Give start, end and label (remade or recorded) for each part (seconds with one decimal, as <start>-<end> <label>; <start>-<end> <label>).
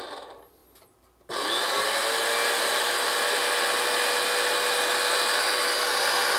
0.0-6.4 recorded